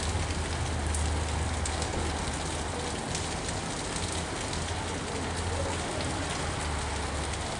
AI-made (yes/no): no